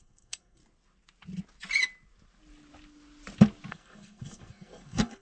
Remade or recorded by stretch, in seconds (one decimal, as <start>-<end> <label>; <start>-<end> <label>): 0.0-0.6 remade; 0.6-3.7 recorded; 3.7-5.2 remade